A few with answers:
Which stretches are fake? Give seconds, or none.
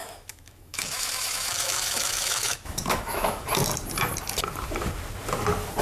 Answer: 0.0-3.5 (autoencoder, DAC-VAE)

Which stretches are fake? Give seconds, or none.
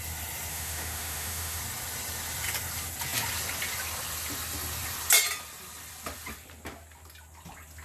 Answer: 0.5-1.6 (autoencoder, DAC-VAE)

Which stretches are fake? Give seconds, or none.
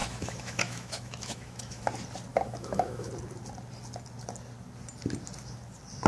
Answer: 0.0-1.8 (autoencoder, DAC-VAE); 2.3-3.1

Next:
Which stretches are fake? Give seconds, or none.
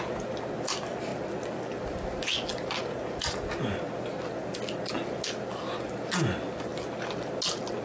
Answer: none